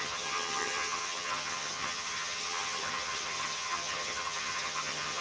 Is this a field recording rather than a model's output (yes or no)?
no